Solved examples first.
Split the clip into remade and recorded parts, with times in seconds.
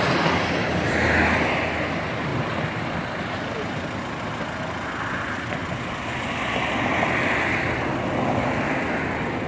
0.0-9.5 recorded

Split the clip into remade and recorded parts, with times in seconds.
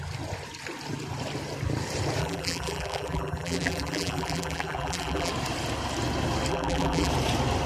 0.0-2.2 recorded; 2.2-5.3 remade; 5.3-6.5 recorded; 6.5-7.1 remade; 7.1-7.7 recorded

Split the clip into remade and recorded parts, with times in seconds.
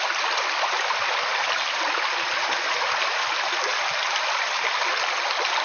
0.0-5.6 recorded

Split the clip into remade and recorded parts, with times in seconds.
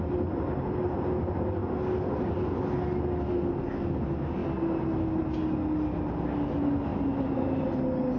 0.0-6.9 recorded; 6.9-7.7 remade; 7.7-8.2 recorded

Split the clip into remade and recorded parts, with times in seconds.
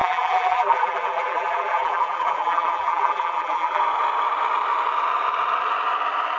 0.0-3.8 remade; 3.8-6.4 recorded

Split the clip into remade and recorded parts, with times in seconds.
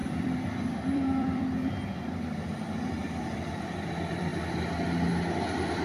0.0-4.3 remade; 4.3-5.3 recorded; 5.3-5.8 remade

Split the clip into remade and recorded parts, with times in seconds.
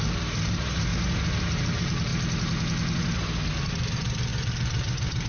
0.0-0.9 remade; 0.9-1.5 recorded; 1.5-2.1 remade; 2.1-3.7 recorded; 3.7-5.3 remade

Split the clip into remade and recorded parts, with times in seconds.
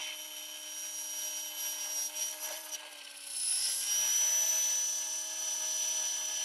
0.0-2.2 recorded; 2.2-4.5 remade; 4.5-5.4 recorded; 5.4-6.4 remade